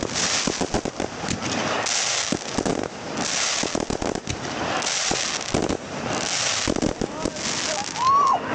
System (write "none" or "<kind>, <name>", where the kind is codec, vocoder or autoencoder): none